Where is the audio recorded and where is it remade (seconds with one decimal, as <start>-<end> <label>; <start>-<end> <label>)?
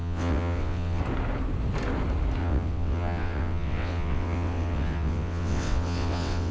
0.0-1.0 remade; 1.0-2.4 recorded; 2.4-6.5 remade